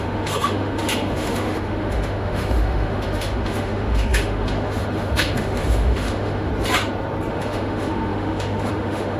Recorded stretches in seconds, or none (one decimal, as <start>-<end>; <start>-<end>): 6.5-7.3